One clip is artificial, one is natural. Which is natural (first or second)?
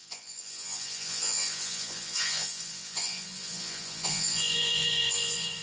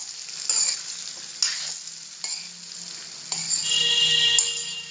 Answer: second